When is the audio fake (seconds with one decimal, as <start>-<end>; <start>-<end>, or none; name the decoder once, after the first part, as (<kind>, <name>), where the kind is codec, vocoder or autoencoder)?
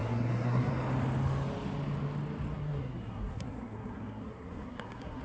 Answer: 0.0-0.7 (codec, SNAC); 2.5-5.2